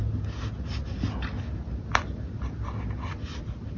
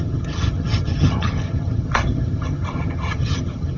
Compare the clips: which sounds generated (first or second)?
second